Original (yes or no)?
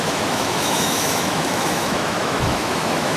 no